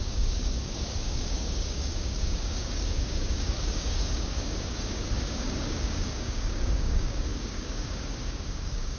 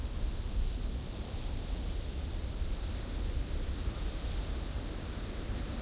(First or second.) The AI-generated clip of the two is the first